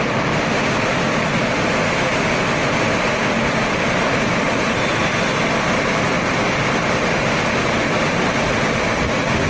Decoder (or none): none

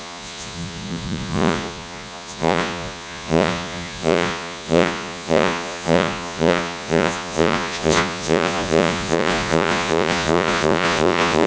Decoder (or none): vocoder, Vocos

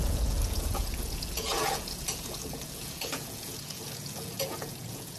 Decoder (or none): vocoder, Vocos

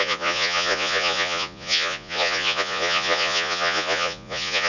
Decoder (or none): vocoder, Vocos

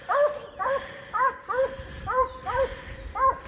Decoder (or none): none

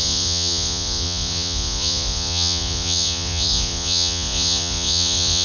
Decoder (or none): vocoder, Vocos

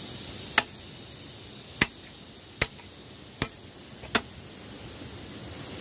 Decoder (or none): none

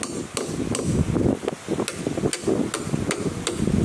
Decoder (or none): none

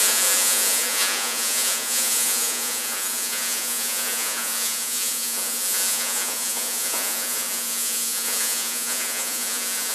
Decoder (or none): vocoder, Vocos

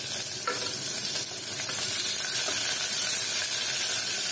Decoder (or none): none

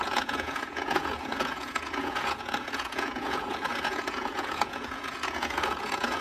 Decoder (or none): vocoder, Vocos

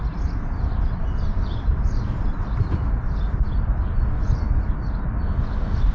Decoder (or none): none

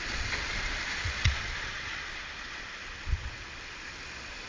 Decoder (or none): vocoder, Vocos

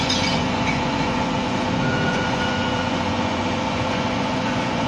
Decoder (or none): vocoder, Vocos